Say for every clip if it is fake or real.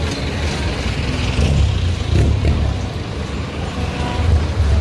real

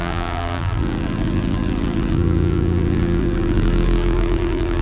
fake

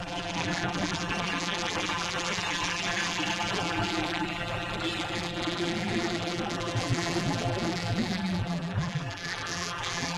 fake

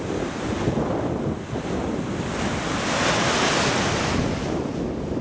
real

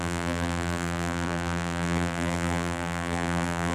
fake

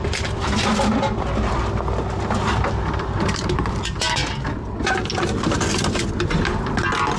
real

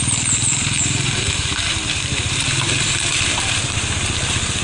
fake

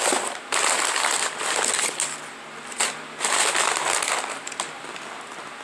real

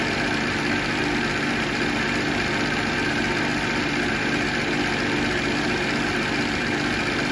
real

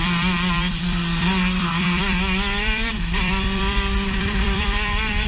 fake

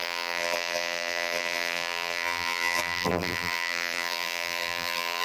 fake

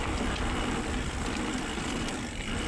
real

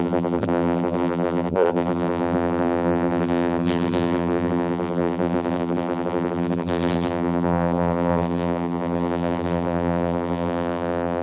fake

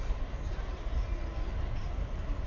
real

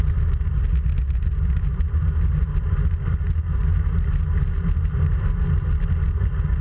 real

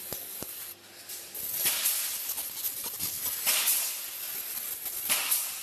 real